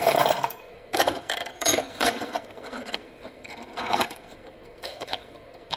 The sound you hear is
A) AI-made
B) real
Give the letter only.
A